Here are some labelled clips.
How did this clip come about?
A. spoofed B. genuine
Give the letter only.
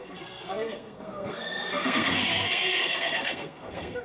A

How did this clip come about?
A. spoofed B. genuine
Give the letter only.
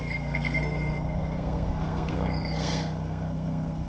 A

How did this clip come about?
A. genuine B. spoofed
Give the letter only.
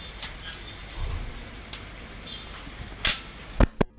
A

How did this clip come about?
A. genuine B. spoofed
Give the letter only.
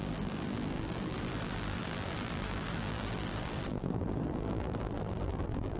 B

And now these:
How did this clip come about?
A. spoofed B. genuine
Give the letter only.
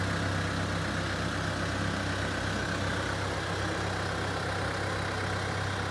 B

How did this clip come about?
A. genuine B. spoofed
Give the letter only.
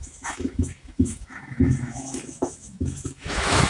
B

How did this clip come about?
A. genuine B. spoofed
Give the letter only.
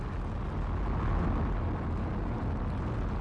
A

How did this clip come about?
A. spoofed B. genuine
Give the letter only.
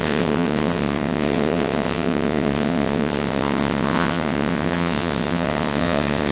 A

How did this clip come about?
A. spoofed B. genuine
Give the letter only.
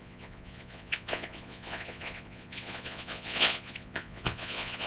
A